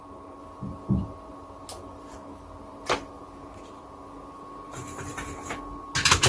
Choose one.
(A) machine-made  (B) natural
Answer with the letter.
B